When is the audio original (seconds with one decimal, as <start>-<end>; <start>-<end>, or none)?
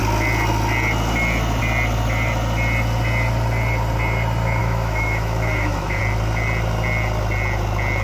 0.0-4.6; 6.0-8.0